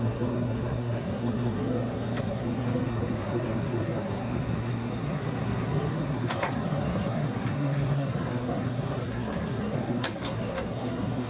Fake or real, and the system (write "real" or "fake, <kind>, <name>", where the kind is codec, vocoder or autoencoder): fake, codec, SNAC